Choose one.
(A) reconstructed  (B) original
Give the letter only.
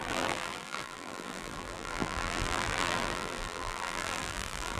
A